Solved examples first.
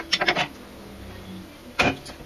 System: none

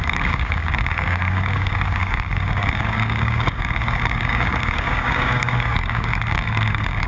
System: codec, DAC